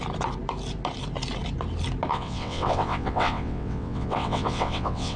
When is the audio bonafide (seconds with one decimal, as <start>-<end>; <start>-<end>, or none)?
0.0-2.1